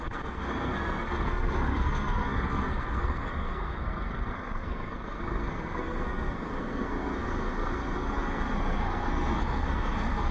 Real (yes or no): no